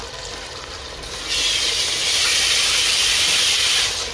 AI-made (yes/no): no